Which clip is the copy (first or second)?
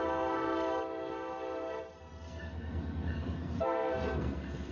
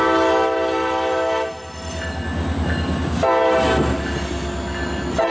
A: first